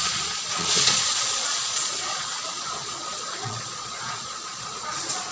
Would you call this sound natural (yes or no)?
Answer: no